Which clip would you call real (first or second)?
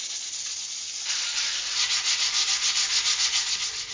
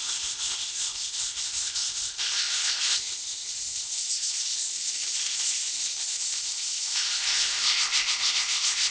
first